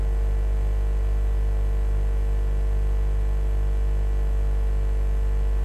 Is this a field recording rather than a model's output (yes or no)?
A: no